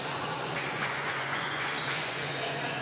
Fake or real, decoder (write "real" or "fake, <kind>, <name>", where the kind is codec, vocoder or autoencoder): fake, vocoder, Vocos